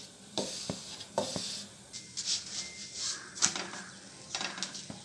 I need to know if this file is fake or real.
real